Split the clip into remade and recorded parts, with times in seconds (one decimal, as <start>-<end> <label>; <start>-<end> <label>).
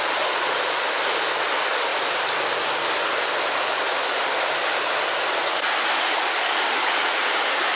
0.0-7.8 recorded